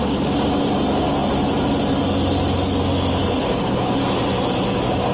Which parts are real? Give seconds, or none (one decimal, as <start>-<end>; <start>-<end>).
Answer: 0.0-3.2; 3.9-5.1